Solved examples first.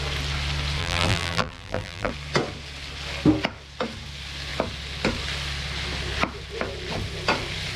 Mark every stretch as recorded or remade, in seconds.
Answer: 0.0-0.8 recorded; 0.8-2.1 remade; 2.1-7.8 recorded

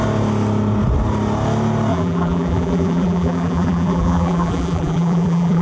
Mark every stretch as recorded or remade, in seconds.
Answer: 0.0-1.9 recorded; 1.9-5.6 remade

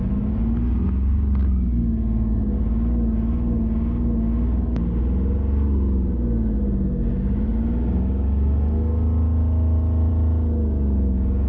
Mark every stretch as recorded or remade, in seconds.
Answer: 0.0-11.5 recorded

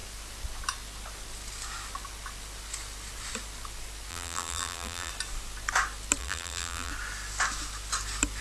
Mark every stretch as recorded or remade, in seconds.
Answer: 0.0-4.1 recorded; 4.1-5.1 remade; 5.1-6.2 recorded; 6.2-6.9 remade; 6.9-8.4 recorded